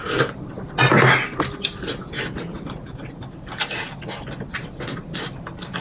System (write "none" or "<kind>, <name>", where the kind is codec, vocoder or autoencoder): none